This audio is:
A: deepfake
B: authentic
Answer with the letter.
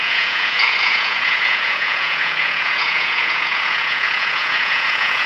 A